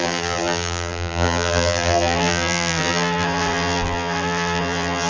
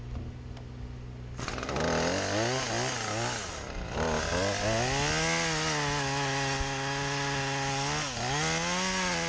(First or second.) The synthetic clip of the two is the first